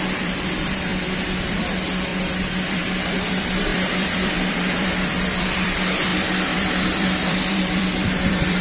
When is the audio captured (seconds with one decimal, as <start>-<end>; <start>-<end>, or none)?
0.9-1.4; 2.1-2.7